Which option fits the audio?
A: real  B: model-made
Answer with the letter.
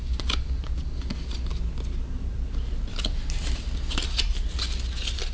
A